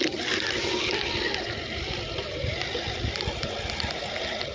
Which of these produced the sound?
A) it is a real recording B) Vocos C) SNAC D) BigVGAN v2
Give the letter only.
A